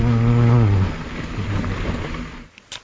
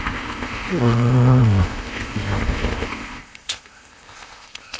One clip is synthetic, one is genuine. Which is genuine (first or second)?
first